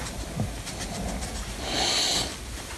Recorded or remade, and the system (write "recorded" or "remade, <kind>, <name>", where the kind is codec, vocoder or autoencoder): recorded